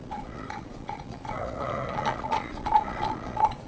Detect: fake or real fake